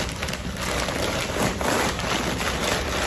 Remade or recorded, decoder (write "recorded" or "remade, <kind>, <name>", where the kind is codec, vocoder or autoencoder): recorded